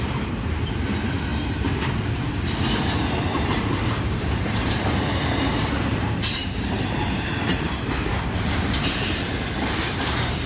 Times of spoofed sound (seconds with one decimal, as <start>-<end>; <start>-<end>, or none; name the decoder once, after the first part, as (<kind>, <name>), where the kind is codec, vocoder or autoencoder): 0.0-10.5 (vocoder, BigVGAN v2)